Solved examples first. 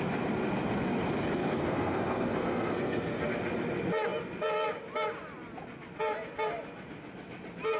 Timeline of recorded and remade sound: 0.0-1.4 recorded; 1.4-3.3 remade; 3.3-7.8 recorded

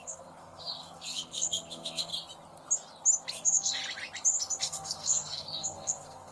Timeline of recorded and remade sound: 0.0-2.1 remade; 2.1-3.3 recorded; 3.3-3.8 remade; 3.8-4.6 recorded; 4.6-6.3 remade